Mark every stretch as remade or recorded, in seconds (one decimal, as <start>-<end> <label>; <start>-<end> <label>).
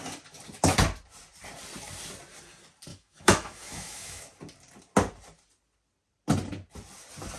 0.0-2.9 recorded; 2.9-4.2 remade; 4.2-7.4 recorded